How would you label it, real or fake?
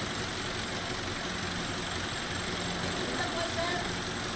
real